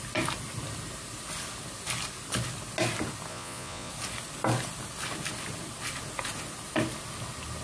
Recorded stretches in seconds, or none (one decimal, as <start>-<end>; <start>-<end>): 0.0-3.3; 3.9-7.6